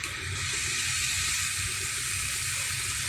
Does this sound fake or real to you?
real